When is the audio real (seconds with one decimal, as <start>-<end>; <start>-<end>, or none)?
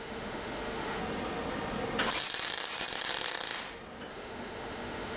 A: 1.0-4.1